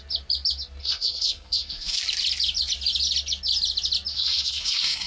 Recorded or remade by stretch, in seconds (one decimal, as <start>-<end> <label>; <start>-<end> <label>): 0.0-0.8 recorded; 0.8-2.0 remade; 2.0-4.1 recorded; 4.1-5.1 remade

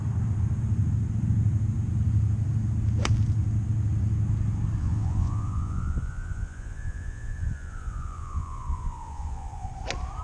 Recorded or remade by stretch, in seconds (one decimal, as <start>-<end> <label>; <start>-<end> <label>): 0.0-4.8 recorded; 4.8-9.7 remade; 9.7-10.2 recorded

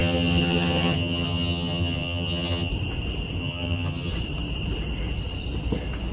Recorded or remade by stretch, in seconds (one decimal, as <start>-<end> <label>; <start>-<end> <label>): 0.0-2.7 remade; 2.7-3.4 recorded; 3.4-4.1 remade; 4.1-6.1 recorded

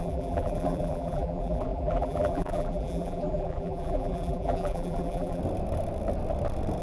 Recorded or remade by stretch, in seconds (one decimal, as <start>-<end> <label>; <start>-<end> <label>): 0.0-5.4 remade; 5.4-6.8 recorded

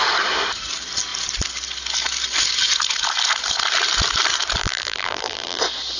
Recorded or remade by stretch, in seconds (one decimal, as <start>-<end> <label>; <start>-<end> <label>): 0.0-4.6 recorded; 4.6-5.6 remade; 5.6-6.0 recorded

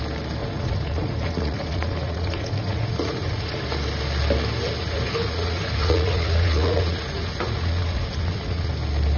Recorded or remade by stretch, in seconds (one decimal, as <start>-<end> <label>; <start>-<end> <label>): 0.0-0.4 recorded; 0.4-3.6 remade; 3.6-4.8 recorded; 4.8-8.7 remade; 8.7-9.2 recorded

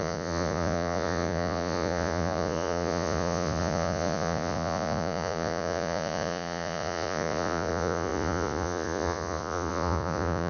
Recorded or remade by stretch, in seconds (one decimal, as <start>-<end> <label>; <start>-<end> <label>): 0.0-10.5 remade